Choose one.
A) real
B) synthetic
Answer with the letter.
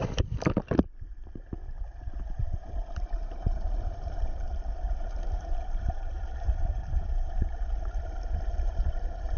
B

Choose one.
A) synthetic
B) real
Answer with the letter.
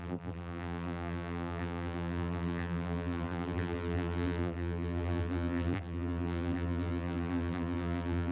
A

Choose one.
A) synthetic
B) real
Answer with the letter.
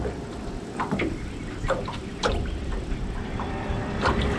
A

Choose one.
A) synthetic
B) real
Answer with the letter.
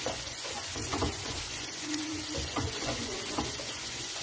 A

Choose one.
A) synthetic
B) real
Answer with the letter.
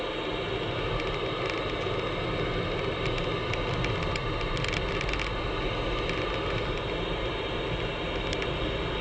B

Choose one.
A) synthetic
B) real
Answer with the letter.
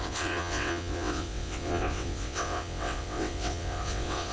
A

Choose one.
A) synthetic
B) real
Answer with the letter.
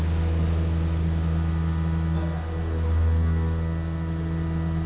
B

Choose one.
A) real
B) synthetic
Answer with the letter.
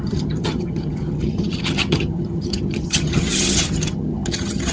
B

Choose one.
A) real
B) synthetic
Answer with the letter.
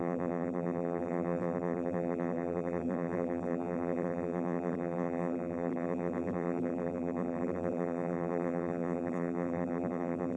B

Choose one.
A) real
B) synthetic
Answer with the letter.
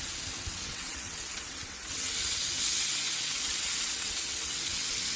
B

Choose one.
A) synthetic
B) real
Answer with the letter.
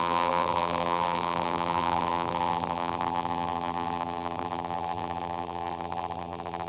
A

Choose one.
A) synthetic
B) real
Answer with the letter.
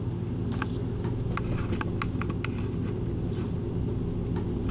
B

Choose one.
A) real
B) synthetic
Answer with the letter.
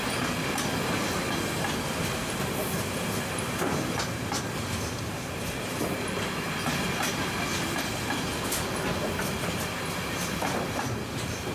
A